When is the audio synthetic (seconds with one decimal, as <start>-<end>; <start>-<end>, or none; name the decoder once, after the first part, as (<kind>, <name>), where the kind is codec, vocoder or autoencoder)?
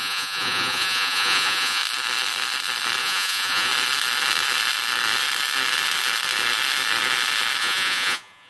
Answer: 0.0-1.8 (vocoder, Vocos); 3.0-3.7; 7.6-8.5